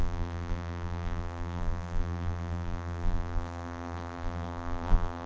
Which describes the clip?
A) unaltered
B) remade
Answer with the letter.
B